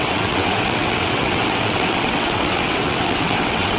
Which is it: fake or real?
fake